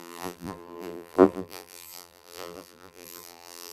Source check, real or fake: fake